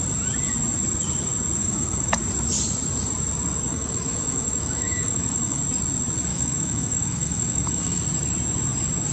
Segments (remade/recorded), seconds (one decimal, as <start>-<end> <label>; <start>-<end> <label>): 0.0-1.6 recorded; 1.6-2.2 remade; 2.2-3.7 recorded; 3.7-5.6 remade; 5.6-6.3 recorded; 6.3-8.0 remade; 8.0-9.1 recorded